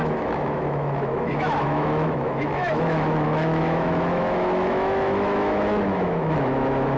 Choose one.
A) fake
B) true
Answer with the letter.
A